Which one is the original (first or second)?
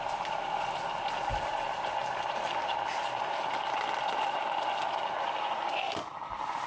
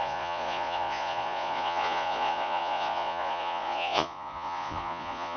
first